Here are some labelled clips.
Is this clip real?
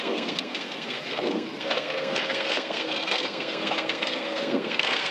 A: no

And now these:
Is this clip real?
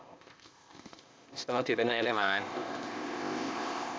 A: no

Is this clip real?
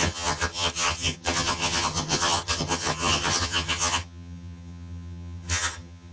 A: no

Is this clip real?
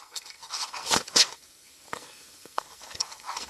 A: no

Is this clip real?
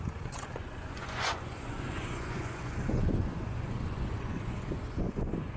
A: no